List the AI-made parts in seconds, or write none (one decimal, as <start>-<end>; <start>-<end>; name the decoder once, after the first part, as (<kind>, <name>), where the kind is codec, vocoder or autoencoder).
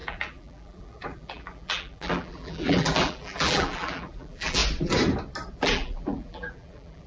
0.0-4.6 (vocoder, BigVGAN v2); 5.5-7.1